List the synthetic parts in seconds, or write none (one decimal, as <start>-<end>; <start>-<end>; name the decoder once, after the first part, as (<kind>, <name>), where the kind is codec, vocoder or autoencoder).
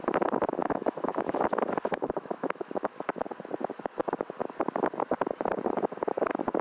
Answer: 0.6-3.2 (autoencoder, DAC-VAE)